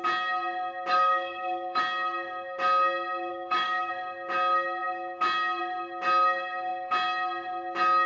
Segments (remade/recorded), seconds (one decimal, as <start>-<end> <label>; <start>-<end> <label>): 0.0-0.9 recorded; 0.9-1.8 remade; 1.8-3.3 recorded; 3.3-3.9 remade; 3.9-8.1 recorded